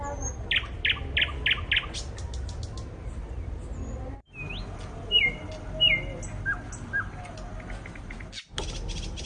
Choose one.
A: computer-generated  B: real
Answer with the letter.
B